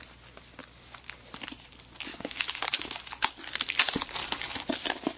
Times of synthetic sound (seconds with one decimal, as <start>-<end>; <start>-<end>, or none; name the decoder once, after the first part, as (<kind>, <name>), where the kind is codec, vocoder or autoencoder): 2.1-2.7 (codec, DAC)